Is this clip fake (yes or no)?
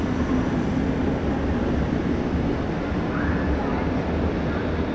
no